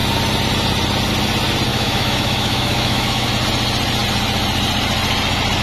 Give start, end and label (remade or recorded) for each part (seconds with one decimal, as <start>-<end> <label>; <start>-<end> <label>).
0.0-1.7 recorded; 1.7-3.3 remade; 3.3-5.6 recorded